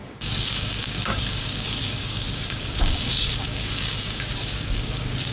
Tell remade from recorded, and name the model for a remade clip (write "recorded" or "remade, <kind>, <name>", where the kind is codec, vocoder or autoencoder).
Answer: remade, codec, DAC